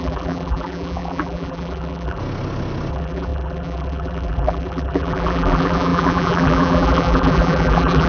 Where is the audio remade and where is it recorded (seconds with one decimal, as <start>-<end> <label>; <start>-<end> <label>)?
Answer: 0.0-2.2 remade; 2.2-2.9 recorded; 2.9-8.1 remade